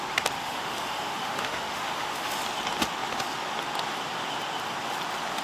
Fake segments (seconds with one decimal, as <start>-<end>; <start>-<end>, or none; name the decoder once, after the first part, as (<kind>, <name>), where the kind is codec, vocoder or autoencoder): 0.4-2.4 (autoencoder, DAC-VAE)